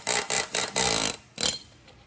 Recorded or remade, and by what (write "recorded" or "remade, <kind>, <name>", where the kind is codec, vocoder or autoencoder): recorded